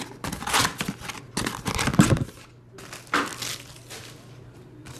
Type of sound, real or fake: real